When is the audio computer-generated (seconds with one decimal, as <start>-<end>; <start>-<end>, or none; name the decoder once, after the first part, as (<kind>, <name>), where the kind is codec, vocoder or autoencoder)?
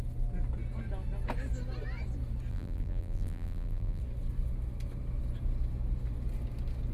2.5-4.0 (vocoder, BigVGAN v2)